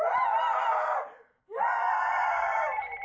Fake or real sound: real